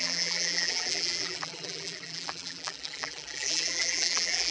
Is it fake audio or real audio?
fake